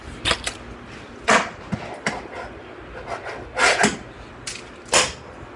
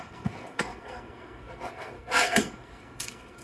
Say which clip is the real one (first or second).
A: first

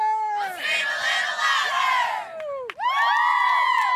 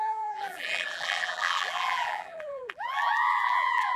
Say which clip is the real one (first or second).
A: first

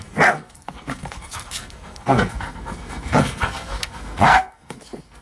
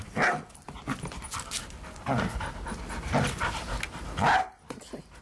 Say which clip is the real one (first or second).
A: second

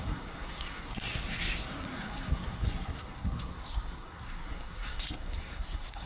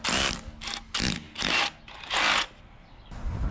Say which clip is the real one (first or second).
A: second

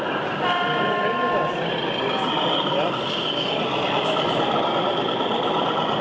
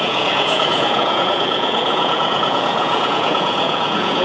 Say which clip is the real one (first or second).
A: first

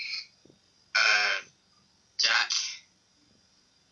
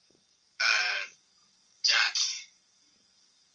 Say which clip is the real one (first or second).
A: first